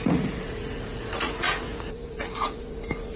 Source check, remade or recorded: remade